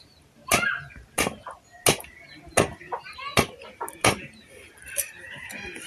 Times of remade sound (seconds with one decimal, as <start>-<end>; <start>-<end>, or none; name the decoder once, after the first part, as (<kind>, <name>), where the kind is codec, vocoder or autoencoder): none